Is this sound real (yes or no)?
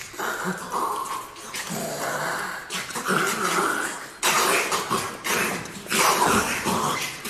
yes